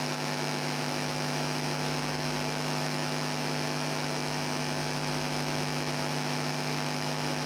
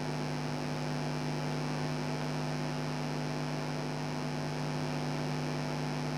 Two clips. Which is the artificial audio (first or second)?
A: first